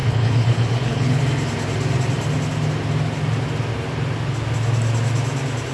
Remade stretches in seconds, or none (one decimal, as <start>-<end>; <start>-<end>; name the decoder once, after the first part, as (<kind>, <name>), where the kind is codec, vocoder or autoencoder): 0.0-1.2 (codec, HILCodec)